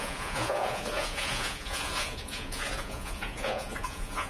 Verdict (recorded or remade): remade